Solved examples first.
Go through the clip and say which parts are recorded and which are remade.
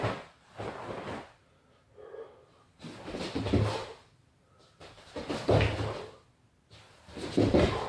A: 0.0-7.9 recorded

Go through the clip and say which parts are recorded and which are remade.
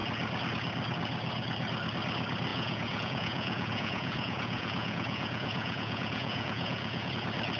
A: 0.0-2.5 recorded; 2.5-7.1 remade; 7.1-7.6 recorded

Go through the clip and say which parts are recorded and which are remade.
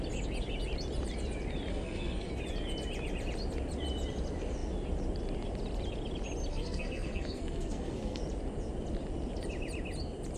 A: 0.0-1.7 recorded; 1.7-2.3 remade; 2.3-6.5 recorded; 6.5-8.2 remade; 8.2-10.4 recorded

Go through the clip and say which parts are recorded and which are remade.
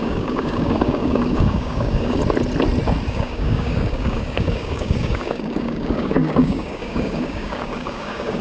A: 0.0-2.2 remade; 2.2-3.1 recorded; 3.1-8.4 remade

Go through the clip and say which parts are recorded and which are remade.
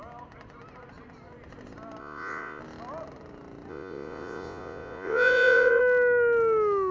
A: 0.0-2.0 recorded; 2.0-2.6 remade; 2.6-3.7 recorded; 3.7-5.8 remade; 5.8-6.9 recorded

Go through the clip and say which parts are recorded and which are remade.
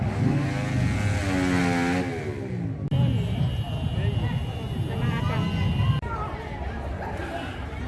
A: 0.0-7.9 recorded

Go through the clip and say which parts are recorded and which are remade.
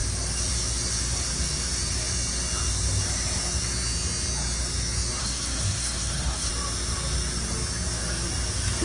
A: 0.0-5.2 recorded; 5.2-6.5 remade; 6.5-8.8 recorded